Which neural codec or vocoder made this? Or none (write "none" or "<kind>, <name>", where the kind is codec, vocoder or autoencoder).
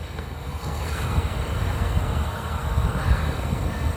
codec, SNAC